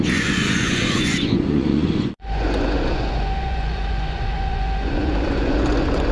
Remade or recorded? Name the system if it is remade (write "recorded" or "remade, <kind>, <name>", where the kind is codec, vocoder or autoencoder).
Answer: remade, vocoder, Vocos